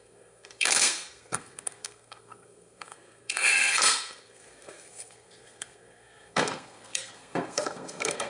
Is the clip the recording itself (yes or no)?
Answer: no